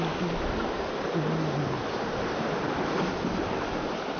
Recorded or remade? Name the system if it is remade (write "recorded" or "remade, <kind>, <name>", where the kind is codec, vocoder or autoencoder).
recorded